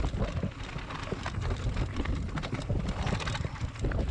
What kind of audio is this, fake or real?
real